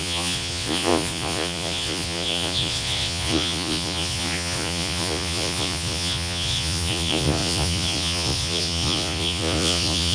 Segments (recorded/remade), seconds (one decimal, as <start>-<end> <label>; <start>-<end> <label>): 0.0-10.1 remade